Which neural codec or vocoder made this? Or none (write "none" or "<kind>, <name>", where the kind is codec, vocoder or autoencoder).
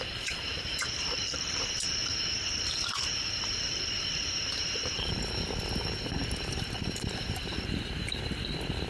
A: vocoder, BigVGAN v2